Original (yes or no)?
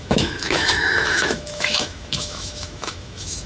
no